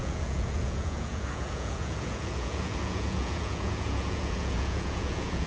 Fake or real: fake